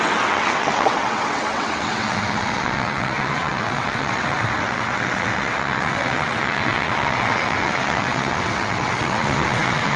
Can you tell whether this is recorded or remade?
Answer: remade